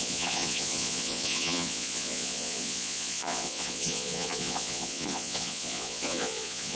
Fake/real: fake